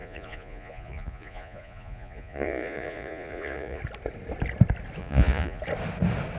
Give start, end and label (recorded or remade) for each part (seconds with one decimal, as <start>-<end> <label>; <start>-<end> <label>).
0.0-3.8 remade; 3.8-5.0 recorded; 5.0-5.6 remade; 5.6-6.4 recorded